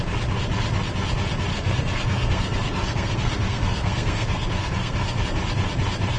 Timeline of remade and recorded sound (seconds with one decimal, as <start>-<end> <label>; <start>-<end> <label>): 0.0-1.5 recorded; 1.5-5.2 remade; 5.2-6.2 recorded